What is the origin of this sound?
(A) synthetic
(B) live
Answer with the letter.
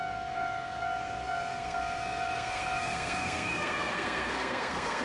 A